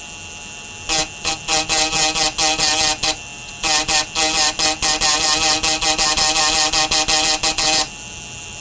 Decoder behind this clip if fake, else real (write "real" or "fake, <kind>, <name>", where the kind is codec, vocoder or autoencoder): real